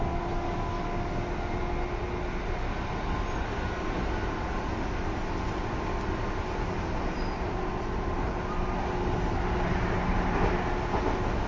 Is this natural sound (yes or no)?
yes